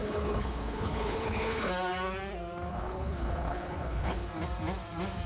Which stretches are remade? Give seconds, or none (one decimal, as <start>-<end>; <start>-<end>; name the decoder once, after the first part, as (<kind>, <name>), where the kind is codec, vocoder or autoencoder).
0.0-1.7 (codec, HILCodec); 2.7-4.3